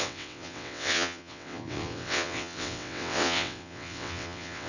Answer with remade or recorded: remade